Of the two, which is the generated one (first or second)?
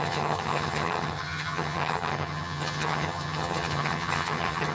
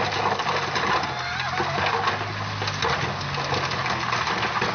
first